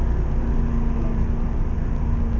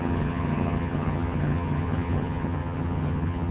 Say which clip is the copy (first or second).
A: second